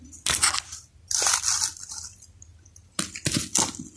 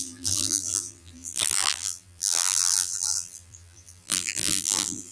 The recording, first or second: first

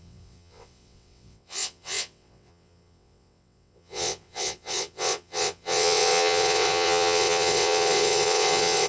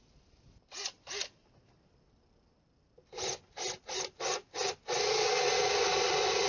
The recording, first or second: second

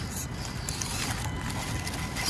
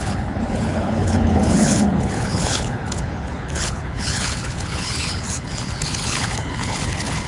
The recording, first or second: first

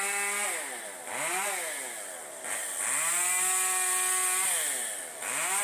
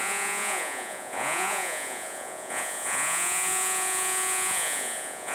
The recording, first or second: first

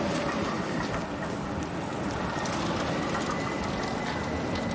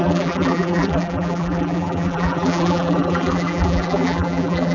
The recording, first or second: first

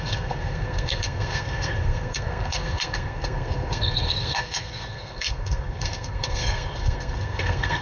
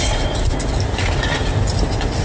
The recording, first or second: second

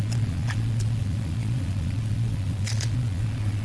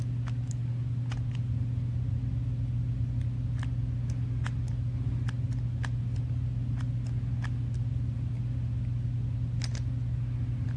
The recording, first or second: second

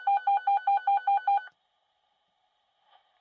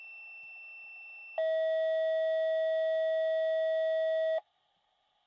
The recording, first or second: second